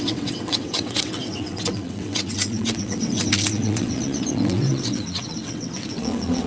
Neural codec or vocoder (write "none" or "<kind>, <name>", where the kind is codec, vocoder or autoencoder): vocoder, WaveNeXt